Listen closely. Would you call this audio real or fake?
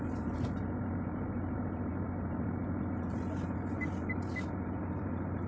real